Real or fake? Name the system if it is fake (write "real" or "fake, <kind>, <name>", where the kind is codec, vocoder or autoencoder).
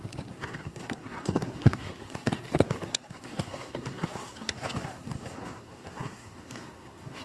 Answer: fake, codec, SNAC